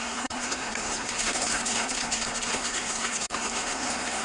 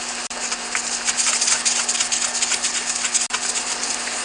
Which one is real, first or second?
second